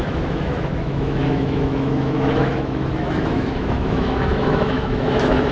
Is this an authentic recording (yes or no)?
no